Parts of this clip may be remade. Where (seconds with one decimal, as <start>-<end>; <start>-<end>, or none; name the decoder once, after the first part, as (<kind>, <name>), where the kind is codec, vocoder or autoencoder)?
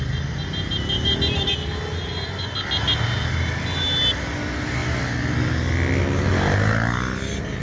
none